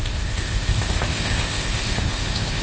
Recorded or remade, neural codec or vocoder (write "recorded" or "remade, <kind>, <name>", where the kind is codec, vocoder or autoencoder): remade, codec, ZipCodec